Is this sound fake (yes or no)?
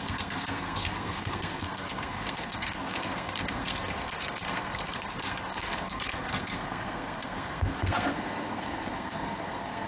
yes